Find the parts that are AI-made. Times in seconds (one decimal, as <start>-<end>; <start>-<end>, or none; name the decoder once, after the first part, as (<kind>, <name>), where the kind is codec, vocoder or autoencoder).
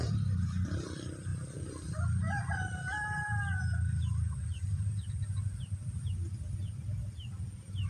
none